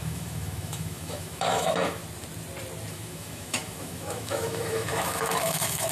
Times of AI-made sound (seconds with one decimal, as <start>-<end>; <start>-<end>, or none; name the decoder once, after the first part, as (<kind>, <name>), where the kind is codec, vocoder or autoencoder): 0.0-2.0 (autoencoder, DAC-VAE); 2.9-5.9